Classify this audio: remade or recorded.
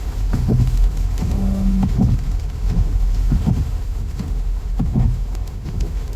remade